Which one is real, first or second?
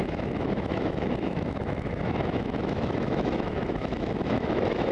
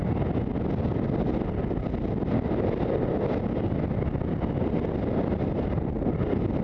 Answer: second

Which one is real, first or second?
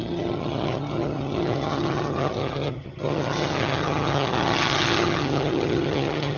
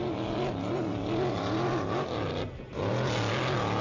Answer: second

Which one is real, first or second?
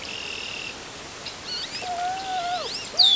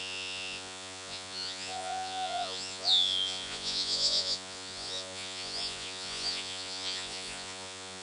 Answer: first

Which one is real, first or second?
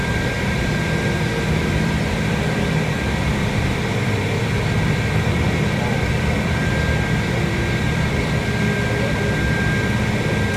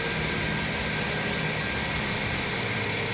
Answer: second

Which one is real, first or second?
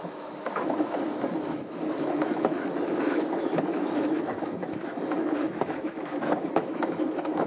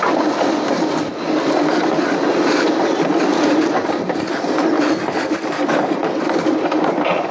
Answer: second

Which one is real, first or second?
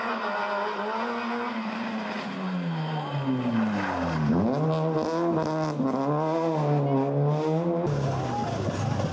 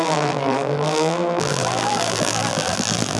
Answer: first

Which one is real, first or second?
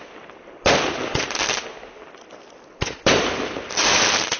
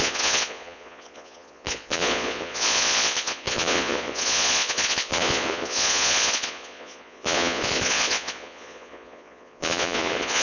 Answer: first